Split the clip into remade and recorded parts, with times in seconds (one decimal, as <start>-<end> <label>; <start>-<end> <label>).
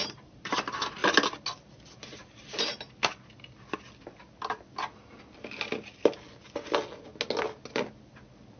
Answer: 0.0-0.5 remade; 0.5-8.6 recorded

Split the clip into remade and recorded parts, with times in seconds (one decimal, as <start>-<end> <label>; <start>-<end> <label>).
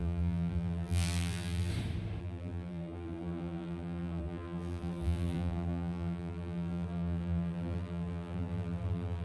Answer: 0.0-1.7 remade; 1.7-2.2 recorded; 2.2-9.2 remade